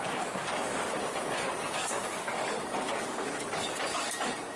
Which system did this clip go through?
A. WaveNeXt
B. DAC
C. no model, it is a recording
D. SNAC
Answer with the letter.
B